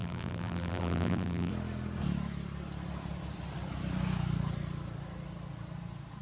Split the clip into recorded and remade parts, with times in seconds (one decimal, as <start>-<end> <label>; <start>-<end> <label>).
0.0-1.5 remade; 1.5-6.2 recorded